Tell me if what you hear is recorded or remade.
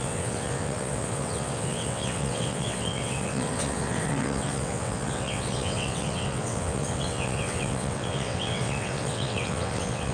remade